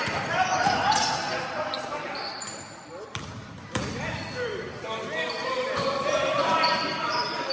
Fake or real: fake